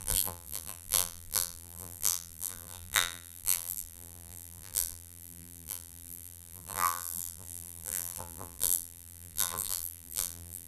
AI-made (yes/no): yes